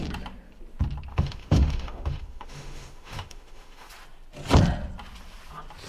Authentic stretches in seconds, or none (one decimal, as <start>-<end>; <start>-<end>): 0.0-1.1; 3.9-5.9